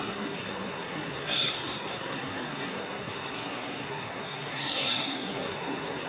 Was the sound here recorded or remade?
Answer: remade